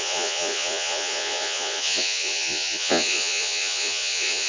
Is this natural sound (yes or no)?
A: no